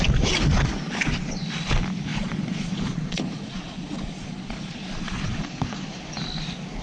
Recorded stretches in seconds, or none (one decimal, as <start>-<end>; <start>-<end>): 0.0-2.1; 6.0-6.8